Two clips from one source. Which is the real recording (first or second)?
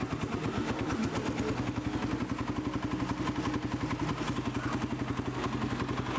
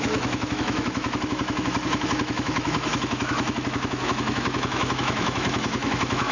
first